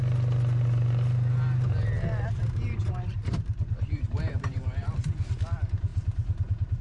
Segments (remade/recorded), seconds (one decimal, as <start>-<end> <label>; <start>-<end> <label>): 0.0-2.4 recorded; 2.4-4.9 remade; 4.9-6.8 recorded